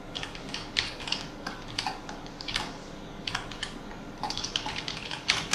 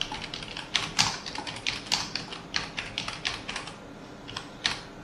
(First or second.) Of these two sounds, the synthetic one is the first